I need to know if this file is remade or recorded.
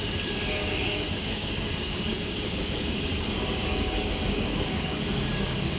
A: remade